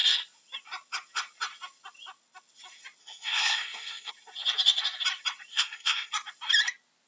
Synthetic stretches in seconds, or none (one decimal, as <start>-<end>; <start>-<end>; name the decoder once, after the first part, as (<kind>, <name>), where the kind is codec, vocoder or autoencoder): 3.0-4.1 (codec, SNAC); 5.5-6.1